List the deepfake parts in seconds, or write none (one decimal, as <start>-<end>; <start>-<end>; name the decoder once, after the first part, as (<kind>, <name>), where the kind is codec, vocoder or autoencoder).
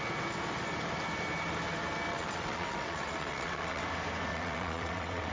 2.1-3.8 (vocoder, WaveNeXt); 4.3-5.3